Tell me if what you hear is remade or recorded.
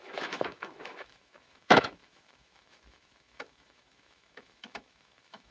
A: remade